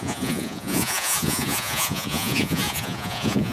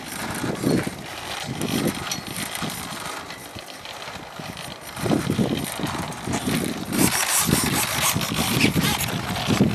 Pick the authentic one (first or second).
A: second